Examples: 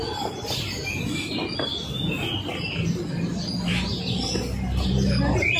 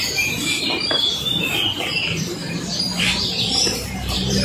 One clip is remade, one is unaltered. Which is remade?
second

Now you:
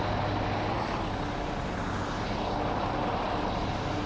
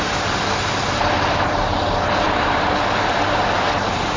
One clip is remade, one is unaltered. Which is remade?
second